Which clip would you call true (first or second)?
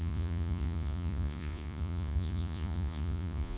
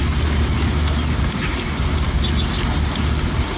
second